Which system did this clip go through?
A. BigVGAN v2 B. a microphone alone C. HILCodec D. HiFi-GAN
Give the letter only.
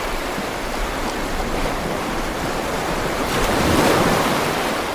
A